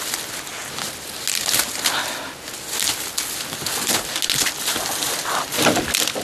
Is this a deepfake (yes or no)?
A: no